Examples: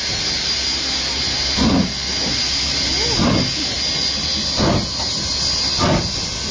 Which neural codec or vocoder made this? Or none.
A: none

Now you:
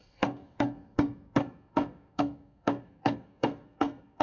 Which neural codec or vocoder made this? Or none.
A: codec, SNAC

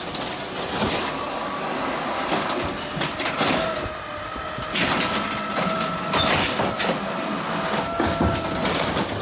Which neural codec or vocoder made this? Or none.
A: none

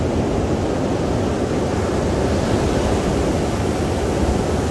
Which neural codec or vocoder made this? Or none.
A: none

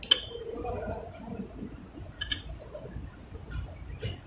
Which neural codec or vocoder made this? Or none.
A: none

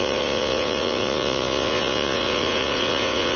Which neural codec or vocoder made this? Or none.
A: vocoder, Vocos